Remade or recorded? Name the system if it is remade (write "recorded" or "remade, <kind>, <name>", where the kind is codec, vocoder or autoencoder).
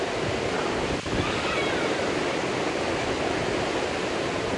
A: recorded